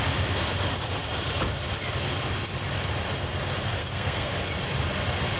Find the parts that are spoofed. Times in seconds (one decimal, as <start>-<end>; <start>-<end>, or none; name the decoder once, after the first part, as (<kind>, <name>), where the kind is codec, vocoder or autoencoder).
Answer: 3.8-4.3 (codec, SNAC)